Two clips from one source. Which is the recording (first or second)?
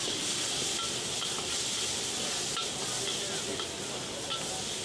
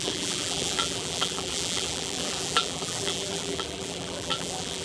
first